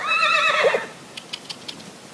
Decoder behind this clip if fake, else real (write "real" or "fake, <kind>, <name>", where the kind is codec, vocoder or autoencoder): real